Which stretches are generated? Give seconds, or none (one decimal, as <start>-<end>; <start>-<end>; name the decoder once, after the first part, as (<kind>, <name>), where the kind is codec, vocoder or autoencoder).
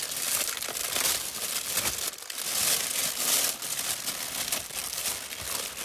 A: none